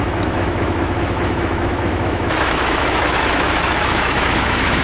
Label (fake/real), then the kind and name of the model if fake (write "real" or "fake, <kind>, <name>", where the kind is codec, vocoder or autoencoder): fake, autoencoder, DAC-VAE